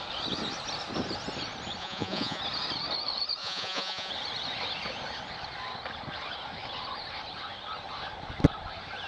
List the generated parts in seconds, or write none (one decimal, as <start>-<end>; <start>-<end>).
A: 1.8-2.4; 3.4-4.1